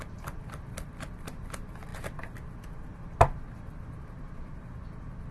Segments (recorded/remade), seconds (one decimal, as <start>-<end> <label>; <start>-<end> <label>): 0.0-5.3 recorded